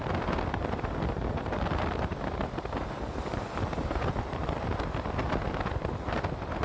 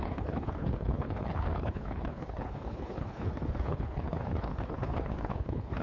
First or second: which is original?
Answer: first